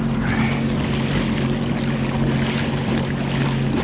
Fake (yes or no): no